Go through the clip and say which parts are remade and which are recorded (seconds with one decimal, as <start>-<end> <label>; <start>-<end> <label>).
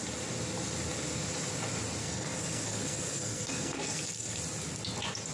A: 0.0-2.0 recorded; 2.0-4.4 remade; 4.4-5.3 recorded